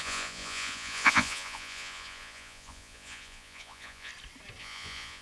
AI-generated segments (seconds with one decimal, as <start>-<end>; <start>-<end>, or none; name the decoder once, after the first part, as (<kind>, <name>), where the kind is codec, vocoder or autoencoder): 0.0-4.1 (vocoder, Vocos); 4.6-5.2